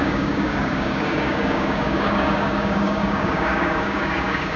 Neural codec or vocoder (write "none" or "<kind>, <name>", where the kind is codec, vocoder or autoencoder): codec, DAC